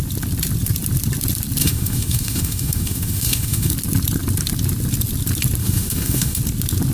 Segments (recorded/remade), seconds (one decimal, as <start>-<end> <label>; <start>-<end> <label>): 0.0-1.6 recorded; 1.6-3.7 remade; 3.7-5.6 recorded; 5.6-6.4 remade; 6.4-6.9 recorded